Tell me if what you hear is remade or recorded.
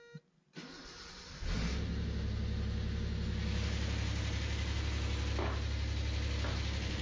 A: recorded